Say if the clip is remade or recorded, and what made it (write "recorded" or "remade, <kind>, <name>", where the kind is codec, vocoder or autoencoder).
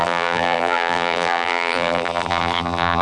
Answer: remade, vocoder, BigVGAN v2